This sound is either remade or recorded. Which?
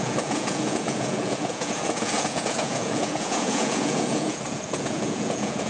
remade